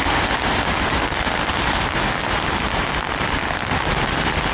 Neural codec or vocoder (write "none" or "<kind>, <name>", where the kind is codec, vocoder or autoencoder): none